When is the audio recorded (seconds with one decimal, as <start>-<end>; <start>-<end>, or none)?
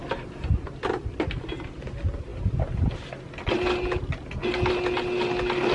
0.0-5.7